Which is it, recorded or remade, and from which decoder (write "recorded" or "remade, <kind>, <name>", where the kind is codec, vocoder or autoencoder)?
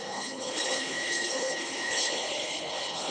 remade, codec, HILCodec